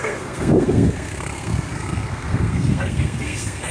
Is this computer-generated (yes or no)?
yes